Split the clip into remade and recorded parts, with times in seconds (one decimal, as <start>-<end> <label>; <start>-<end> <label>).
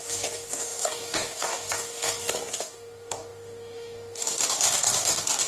0.0-5.5 remade